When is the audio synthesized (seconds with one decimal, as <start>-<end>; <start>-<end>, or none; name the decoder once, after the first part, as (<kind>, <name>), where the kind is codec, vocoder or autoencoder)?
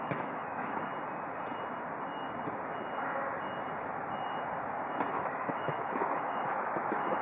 0.0-0.9 (autoencoder, DAC-VAE); 5.1-7.2